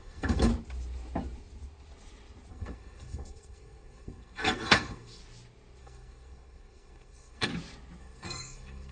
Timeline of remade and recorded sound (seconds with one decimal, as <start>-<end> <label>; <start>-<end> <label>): 0.0-0.5 remade; 0.5-2.5 recorded; 2.5-5.2 remade; 5.2-5.8 recorded; 5.8-7.5 remade; 7.5-8.0 recorded; 8.0-8.9 remade